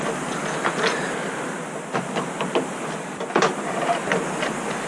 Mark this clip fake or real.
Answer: real